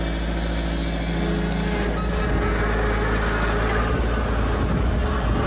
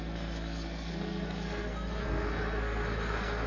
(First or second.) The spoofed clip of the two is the second